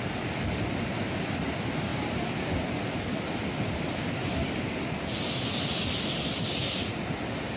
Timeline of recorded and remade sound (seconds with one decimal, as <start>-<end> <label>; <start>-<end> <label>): 0.0-7.6 recorded